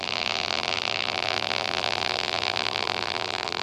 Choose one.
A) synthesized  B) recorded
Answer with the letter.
A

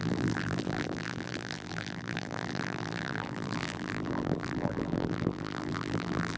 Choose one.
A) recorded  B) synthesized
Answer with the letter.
B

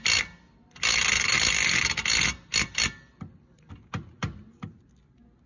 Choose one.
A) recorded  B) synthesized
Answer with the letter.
A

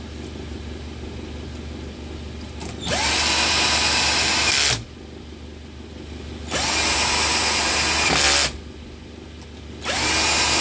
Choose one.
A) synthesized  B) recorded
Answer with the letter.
B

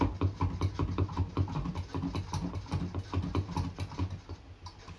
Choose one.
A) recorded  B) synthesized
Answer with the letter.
A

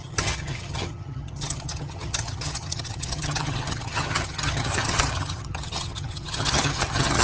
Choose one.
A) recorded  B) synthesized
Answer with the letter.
B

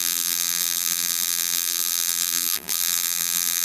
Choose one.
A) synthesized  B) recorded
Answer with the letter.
A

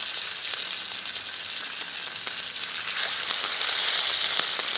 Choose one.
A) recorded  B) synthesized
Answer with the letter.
A